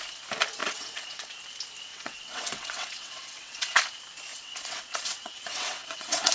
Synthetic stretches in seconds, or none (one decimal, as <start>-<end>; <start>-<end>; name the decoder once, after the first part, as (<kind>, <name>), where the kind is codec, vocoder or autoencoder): 0.6-1.3 (vocoder, WaveNeXt); 1.9-3.8; 4.3-6.3